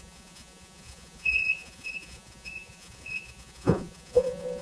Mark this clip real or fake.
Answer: fake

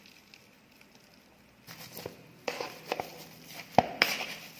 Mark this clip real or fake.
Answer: real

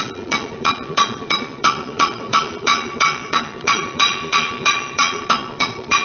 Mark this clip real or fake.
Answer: fake